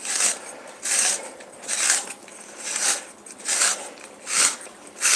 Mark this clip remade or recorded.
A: recorded